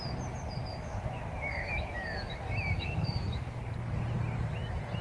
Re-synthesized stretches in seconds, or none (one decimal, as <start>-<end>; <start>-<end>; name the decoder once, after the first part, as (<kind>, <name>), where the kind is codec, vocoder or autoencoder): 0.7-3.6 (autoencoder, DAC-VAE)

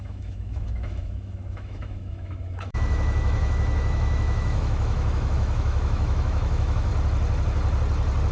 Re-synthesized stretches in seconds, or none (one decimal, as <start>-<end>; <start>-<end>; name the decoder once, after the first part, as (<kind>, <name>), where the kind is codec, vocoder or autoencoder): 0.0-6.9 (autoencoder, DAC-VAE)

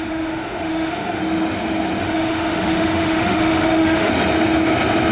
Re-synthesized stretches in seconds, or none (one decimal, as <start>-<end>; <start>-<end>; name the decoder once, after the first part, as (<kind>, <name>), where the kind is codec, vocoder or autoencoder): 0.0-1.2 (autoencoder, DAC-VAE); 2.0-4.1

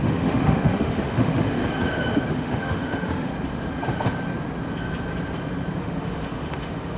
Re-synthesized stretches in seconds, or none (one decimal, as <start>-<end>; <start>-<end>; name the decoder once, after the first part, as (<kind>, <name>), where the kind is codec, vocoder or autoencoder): 0.0-1.6 (autoencoder, DAC-VAE); 2.3-3.3; 5.8-7.0

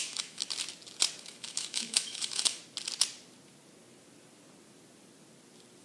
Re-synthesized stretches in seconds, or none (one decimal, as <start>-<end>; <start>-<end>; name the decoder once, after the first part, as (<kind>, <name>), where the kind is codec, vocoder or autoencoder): 0.0-0.4 (autoencoder, DAC-VAE); 1.2-2.6

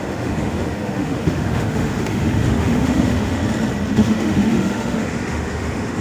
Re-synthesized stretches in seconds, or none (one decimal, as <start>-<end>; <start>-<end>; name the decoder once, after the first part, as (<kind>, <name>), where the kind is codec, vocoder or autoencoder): 0.0-3.4 (autoencoder, DAC-VAE); 3.9-6.0

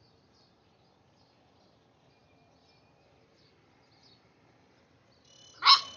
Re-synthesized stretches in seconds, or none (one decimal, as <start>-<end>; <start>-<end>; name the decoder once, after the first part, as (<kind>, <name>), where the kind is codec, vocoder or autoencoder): none